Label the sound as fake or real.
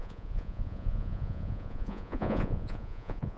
fake